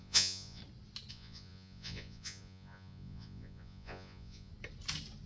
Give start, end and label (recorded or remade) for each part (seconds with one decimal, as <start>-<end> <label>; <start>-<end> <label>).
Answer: 0.0-0.6 remade; 0.6-1.1 recorded; 1.1-4.5 remade; 4.5-5.3 recorded